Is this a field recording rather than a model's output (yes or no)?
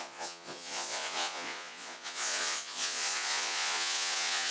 no